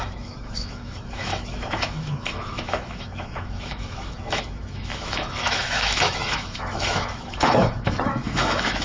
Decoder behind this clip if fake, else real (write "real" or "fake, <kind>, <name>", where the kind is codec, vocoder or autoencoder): fake, autoencoder, DAC-VAE